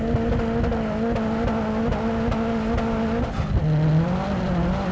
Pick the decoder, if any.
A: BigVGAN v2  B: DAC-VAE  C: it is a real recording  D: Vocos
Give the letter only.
C